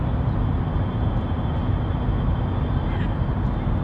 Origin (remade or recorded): recorded